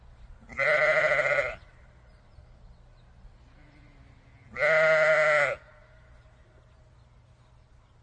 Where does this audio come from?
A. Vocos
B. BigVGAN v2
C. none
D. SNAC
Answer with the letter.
C